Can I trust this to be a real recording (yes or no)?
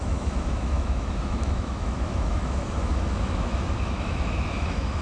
no